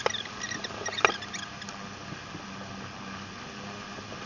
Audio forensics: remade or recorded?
recorded